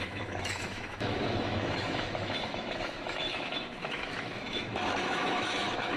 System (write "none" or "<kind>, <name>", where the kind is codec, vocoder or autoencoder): autoencoder, DAC-VAE